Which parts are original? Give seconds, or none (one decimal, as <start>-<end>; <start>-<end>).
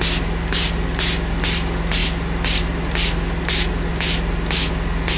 0.0-5.2